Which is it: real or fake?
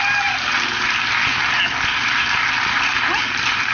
real